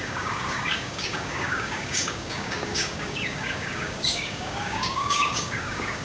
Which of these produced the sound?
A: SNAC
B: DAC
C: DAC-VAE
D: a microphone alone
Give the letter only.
B